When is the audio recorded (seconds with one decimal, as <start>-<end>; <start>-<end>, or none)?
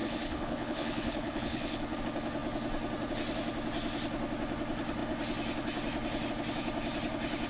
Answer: 2.0-7.5